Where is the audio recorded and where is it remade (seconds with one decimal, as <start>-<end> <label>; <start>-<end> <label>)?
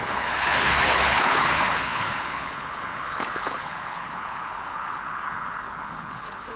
0.0-6.6 remade